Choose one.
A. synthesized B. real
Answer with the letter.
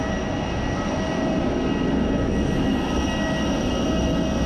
B